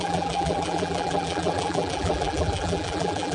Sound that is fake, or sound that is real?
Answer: fake